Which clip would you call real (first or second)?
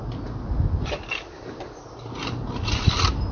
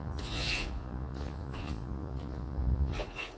first